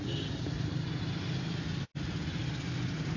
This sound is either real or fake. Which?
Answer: real